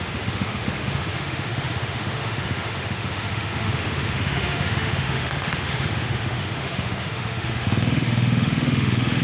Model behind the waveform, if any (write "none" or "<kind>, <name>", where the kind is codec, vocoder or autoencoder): autoencoder, DAC-VAE